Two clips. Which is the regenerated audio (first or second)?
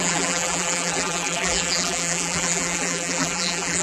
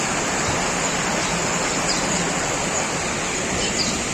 first